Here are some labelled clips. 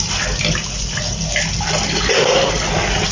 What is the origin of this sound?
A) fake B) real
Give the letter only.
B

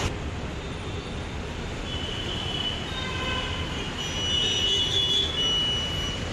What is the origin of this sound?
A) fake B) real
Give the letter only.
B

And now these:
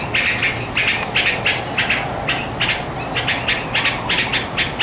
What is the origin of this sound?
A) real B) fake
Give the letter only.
A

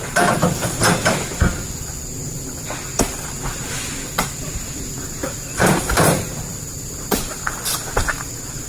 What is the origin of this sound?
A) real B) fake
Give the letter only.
B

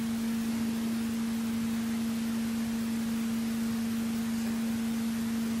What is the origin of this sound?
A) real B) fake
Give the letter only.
A